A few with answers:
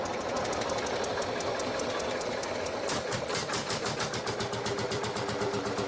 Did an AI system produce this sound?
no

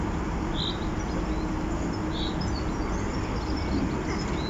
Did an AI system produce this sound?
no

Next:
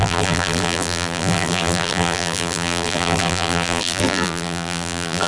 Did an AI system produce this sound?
yes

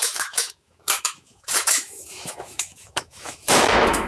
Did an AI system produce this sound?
yes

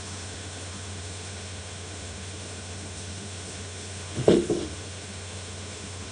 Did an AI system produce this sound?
yes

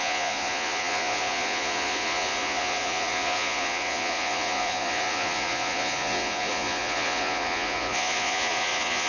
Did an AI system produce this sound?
yes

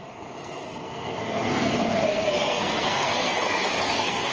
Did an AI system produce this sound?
yes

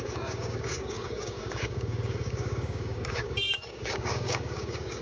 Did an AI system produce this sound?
yes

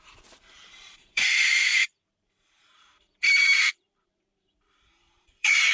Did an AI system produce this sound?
yes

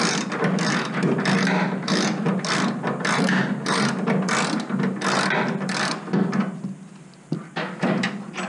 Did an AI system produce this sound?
no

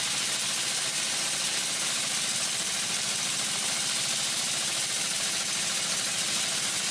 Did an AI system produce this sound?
no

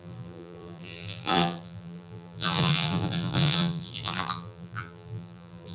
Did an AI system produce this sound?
yes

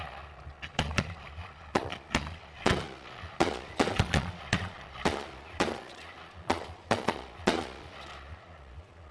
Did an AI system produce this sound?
yes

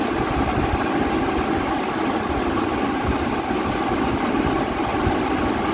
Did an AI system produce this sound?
no